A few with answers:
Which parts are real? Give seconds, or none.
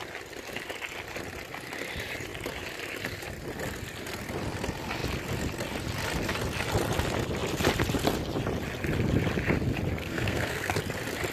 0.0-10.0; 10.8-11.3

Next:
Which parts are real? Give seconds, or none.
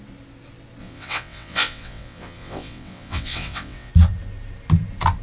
0.0-0.8; 3.9-5.2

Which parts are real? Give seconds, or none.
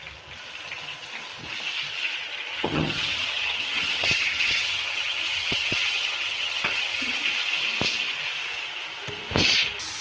0.0-2.5; 7.2-10.0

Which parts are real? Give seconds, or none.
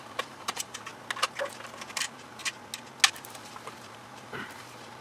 0.9-2.0; 2.4-3.1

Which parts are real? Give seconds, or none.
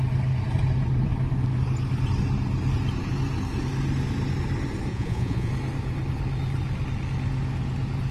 0.0-4.9; 5.5-8.1